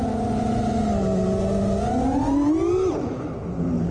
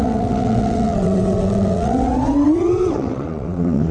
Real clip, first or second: first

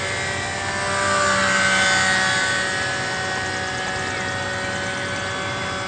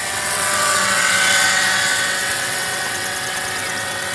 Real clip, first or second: first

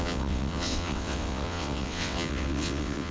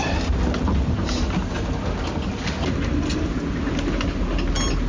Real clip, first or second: second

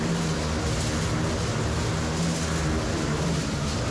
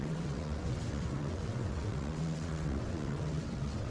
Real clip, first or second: first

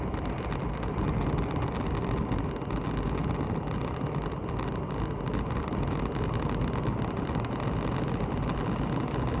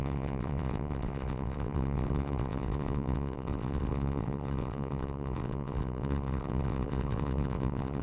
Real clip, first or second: first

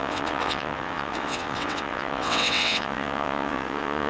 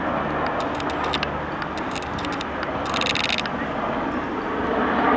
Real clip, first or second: second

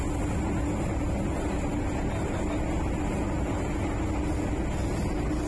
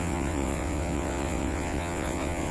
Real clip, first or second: first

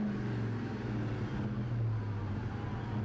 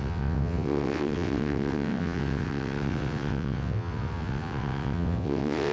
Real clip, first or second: first